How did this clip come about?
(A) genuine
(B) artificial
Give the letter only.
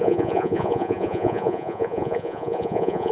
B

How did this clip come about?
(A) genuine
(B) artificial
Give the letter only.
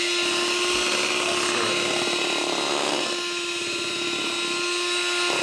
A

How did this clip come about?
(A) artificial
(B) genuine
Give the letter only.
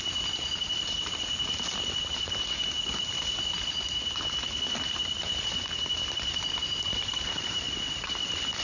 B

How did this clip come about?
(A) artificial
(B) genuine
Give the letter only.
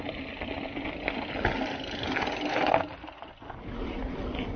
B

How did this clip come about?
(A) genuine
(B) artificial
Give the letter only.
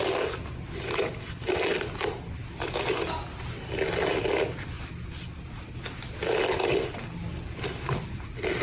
A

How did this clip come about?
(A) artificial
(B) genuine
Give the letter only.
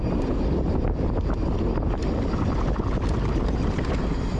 B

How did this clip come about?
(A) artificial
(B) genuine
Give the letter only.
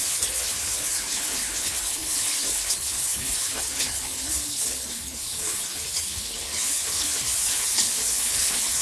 A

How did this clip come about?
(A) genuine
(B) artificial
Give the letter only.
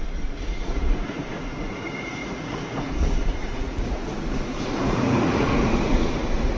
B